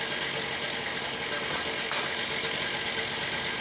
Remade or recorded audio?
recorded